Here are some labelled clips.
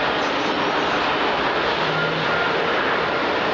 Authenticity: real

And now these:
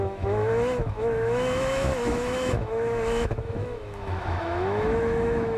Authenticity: fake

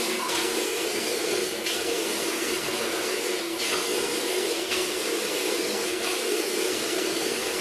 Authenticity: fake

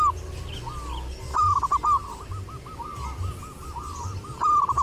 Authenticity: real